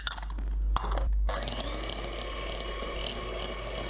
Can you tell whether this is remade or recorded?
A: recorded